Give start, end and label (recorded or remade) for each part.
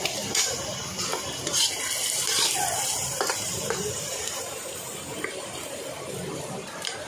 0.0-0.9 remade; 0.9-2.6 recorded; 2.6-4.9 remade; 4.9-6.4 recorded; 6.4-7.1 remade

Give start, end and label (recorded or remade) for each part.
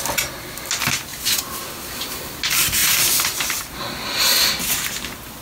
0.0-1.1 recorded; 1.1-2.2 remade; 2.2-2.8 recorded; 2.8-3.8 remade; 3.8-5.4 recorded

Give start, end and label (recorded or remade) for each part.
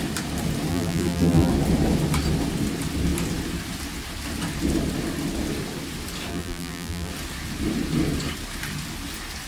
0.0-0.7 recorded; 0.7-1.5 remade; 1.5-6.3 recorded; 6.3-7.1 remade; 7.1-9.5 recorded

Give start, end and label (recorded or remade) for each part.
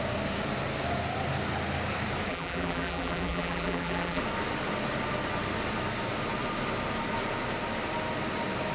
0.0-2.3 recorded; 2.3-4.2 remade; 4.2-8.7 recorded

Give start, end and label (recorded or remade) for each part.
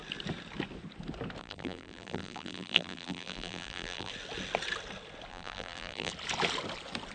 0.0-1.4 recorded; 1.4-4.1 remade; 4.1-5.3 recorded; 5.3-6.1 remade; 6.1-7.1 recorded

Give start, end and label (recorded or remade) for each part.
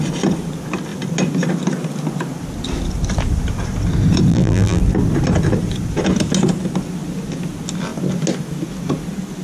0.0-4.3 recorded; 4.3-4.8 remade; 4.8-9.4 recorded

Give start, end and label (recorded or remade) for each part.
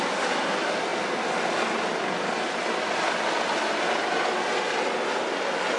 0.0-5.8 recorded